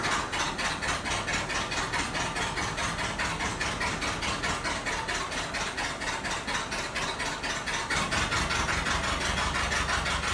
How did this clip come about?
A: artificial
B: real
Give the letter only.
B